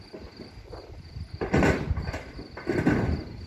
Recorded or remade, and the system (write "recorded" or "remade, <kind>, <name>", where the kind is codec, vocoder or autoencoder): recorded